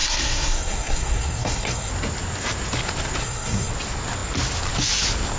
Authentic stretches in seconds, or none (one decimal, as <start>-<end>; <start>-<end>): 1.9-3.2; 3.7-5.4